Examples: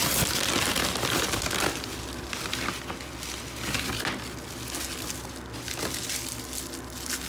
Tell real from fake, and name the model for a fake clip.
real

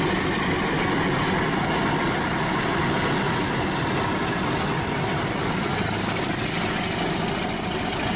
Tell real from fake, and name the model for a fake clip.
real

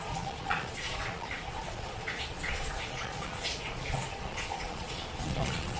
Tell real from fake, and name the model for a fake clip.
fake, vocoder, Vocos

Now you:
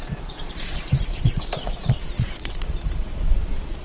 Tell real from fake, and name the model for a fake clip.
fake, vocoder, Vocos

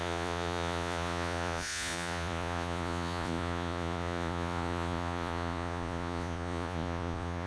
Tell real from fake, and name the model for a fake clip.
fake, vocoder, Vocos